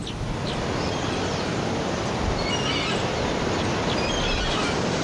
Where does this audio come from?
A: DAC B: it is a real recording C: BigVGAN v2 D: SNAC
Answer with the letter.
B